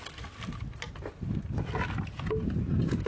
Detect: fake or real real